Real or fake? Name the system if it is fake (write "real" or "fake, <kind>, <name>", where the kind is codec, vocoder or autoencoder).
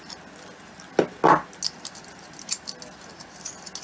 real